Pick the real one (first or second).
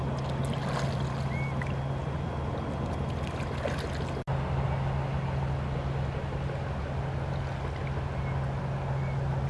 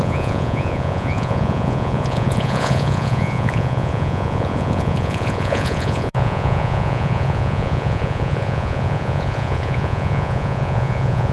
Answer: first